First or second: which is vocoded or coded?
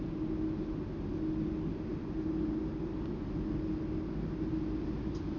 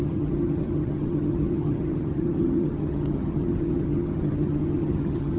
second